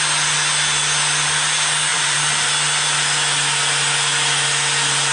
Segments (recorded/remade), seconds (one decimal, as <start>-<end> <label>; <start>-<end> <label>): 0.0-1.9 recorded; 1.9-2.5 remade; 2.5-5.1 recorded